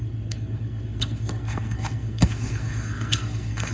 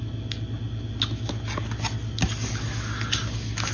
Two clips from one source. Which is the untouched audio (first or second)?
second